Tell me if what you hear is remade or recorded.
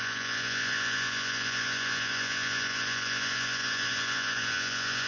remade